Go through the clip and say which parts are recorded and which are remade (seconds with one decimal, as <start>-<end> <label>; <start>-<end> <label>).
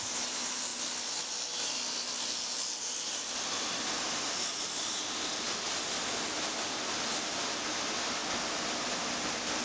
0.0-9.6 recorded